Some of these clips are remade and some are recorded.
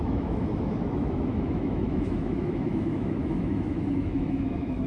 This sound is remade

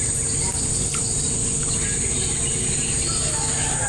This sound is recorded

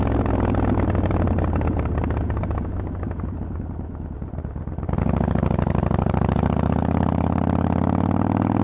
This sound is recorded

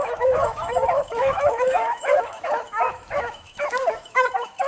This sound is remade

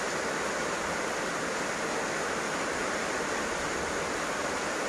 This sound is recorded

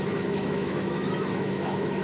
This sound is remade